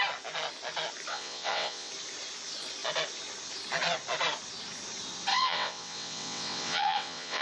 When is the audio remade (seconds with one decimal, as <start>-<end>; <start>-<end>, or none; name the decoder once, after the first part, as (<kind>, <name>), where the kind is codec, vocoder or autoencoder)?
1.1-1.9 (vocoder, WaveNeXt); 5.3-7.4